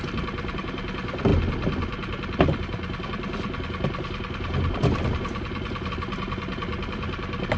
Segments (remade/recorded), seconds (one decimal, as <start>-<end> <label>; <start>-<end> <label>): 0.0-7.6 recorded